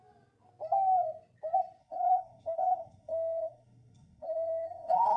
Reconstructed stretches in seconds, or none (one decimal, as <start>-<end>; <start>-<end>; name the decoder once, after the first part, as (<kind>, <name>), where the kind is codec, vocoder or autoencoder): 1.8-5.2 (codec, SNAC)